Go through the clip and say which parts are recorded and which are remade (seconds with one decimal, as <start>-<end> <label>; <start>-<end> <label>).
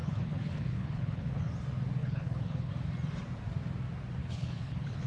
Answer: 0.0-1.5 remade; 1.5-2.0 recorded; 2.0-2.7 remade; 2.7-4.2 recorded; 4.2-5.1 remade